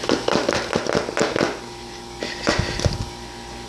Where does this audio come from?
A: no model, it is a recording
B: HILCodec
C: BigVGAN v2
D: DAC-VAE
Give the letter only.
A